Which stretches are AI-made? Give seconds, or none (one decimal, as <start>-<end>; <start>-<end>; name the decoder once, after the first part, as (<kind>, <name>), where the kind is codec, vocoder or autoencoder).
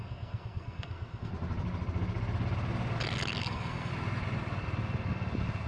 0.0-1.3 (codec, SNAC); 3.4-3.9